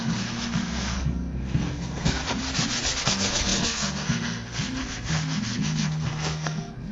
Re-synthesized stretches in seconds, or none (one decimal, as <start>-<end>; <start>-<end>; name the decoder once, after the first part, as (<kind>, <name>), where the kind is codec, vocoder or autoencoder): 0.0-2.2 (codec, SNAC); 3.0-6.9